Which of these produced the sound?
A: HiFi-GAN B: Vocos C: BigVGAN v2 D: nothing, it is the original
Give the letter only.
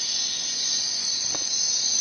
B